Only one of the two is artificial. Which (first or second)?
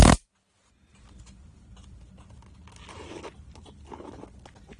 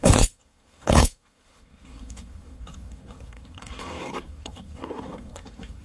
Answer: second